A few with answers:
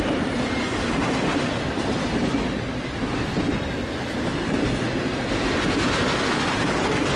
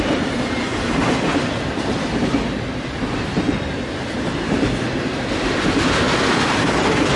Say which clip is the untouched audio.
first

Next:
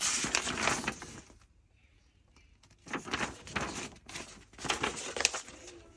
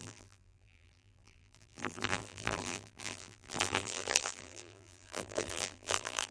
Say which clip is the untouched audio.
first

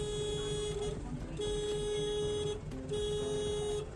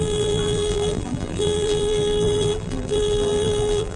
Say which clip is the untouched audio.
first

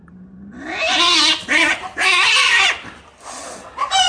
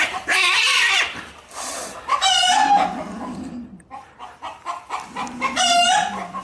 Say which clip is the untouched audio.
first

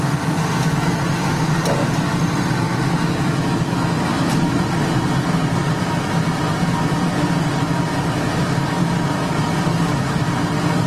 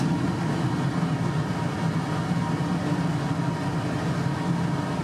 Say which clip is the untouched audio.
second